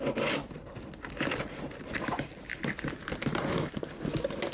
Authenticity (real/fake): real